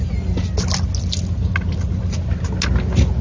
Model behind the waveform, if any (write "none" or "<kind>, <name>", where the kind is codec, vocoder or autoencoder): none